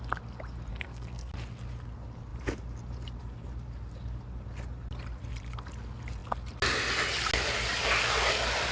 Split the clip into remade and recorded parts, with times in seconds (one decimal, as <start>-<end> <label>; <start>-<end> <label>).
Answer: 0.0-0.7 recorded; 0.7-1.3 remade; 1.3-8.7 recorded